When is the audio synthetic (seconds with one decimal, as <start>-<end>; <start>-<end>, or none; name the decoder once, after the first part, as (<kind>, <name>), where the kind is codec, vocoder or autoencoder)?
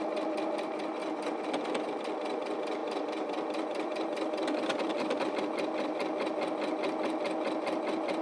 1.0-1.8 (vocoder, BigVGAN v2); 2.8-5.3